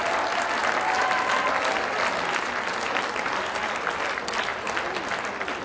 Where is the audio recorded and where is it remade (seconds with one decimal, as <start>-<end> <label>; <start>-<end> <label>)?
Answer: 0.0-5.6 recorded